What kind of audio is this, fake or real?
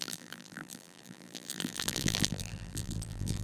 fake